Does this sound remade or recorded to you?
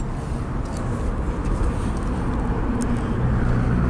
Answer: recorded